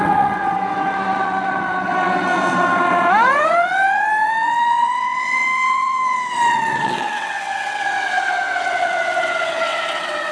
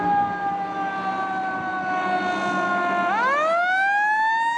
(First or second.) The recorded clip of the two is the second